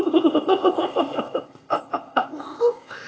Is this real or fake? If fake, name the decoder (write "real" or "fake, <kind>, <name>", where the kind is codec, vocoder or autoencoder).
fake, codec, ZipCodec